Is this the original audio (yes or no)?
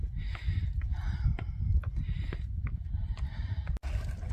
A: yes